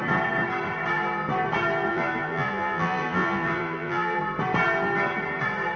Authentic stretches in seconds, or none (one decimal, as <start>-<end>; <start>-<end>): 0.0-1.9; 4.2-5.8